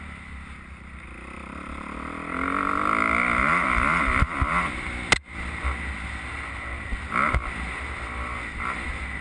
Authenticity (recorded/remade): recorded